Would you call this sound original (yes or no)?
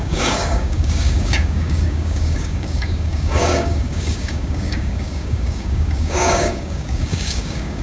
no